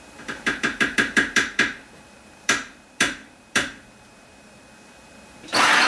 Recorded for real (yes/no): no